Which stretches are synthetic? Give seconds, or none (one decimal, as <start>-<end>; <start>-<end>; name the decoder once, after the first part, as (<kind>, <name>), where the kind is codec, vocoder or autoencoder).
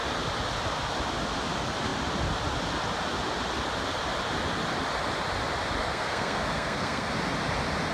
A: 5.8-7.1 (codec, SNAC)